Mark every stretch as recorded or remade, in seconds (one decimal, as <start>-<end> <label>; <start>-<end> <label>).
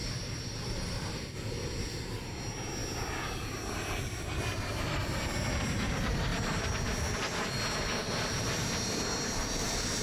0.0-1.2 remade; 1.2-10.0 recorded